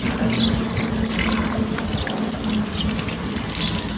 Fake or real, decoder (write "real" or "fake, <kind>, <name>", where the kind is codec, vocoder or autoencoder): real